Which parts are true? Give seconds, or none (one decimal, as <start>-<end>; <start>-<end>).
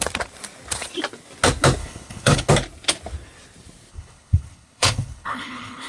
0.0-1.8; 2.5-3.9